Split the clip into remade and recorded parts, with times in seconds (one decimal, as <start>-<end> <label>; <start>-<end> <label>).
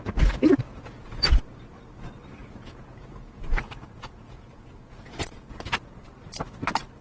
0.0-0.7 recorded; 0.7-1.4 remade; 1.4-2.4 recorded; 2.4-6.0 remade; 6.0-7.0 recorded